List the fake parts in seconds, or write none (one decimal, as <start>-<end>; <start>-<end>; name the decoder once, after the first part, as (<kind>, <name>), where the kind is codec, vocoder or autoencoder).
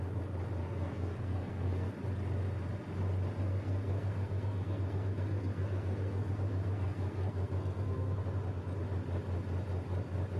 0.6-1.9 (codec, SNAC); 3.4-8.2